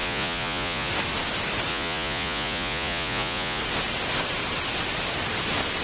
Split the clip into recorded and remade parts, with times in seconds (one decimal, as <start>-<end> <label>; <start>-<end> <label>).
0.0-0.9 remade; 0.9-1.7 recorded; 1.7-3.6 remade; 3.6-5.8 recorded